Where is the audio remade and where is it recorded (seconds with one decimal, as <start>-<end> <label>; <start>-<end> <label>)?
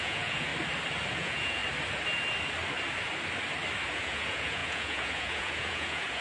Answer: 0.0-0.5 remade; 0.5-1.1 recorded; 1.1-1.6 remade; 1.6-3.9 recorded; 3.9-6.2 remade